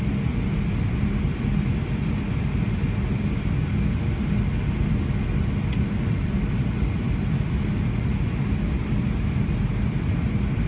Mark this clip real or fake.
real